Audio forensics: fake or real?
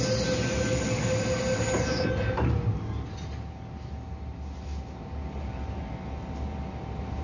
real